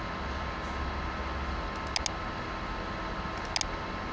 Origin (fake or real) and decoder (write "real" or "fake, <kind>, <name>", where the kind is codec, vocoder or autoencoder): real